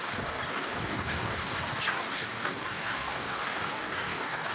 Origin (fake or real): fake